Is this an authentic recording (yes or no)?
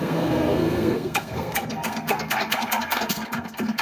no